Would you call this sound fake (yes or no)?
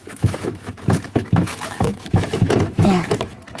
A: yes